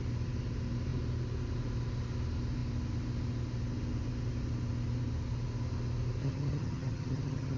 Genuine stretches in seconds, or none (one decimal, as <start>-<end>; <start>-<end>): 0.0-6.2